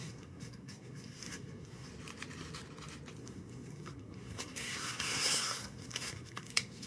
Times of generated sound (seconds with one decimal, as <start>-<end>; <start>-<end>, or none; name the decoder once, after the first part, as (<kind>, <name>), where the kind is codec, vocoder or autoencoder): 0.0-1.9 (codec, SNAC); 3.2-6.9